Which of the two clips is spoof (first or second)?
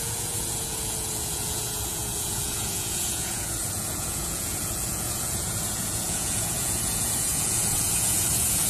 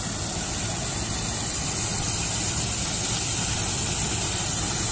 first